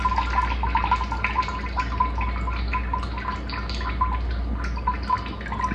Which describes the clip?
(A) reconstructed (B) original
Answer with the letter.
B